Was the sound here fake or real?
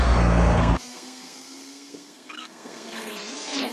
fake